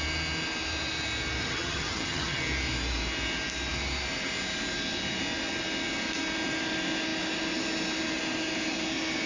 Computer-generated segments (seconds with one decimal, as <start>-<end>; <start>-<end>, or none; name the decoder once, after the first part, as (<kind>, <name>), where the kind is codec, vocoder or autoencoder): 1.4-2.4 (vocoder, HiFi-GAN)